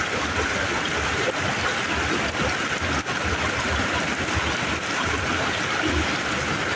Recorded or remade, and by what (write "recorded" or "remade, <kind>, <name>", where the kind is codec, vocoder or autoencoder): recorded